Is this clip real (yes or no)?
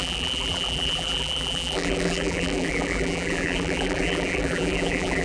no